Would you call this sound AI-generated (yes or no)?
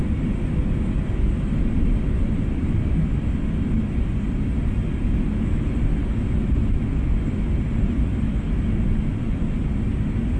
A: no